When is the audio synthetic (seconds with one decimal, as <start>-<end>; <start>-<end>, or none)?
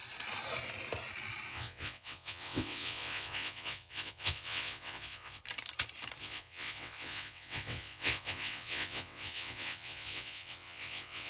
1.5-5.4; 6.2-11.3